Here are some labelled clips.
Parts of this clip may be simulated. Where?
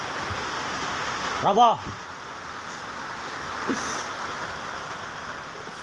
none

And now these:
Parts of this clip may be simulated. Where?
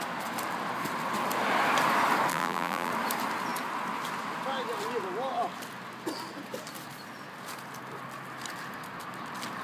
2.3-2.9 (vocoder, BigVGAN v2)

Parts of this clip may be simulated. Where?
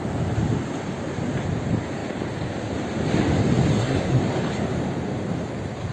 3.7-4.2 (codec, SNAC)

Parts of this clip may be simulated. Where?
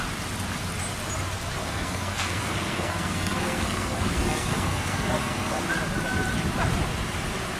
1.6-5.6 (codec, SNAC)